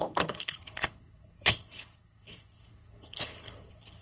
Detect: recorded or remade remade